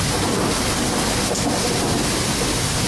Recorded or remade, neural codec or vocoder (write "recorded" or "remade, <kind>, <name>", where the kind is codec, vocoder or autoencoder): recorded